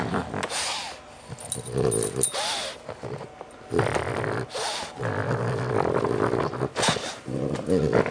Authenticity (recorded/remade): recorded